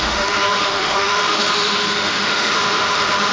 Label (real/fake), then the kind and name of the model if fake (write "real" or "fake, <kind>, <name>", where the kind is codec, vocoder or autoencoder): fake, autoencoder, DAC-VAE